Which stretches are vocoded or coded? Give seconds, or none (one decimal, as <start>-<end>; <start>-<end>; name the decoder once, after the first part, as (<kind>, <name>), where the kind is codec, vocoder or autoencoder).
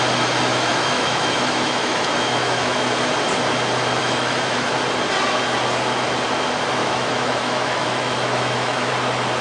0.5-2.9 (autoencoder, DAC-VAE); 4.0-4.8; 6.8-8.9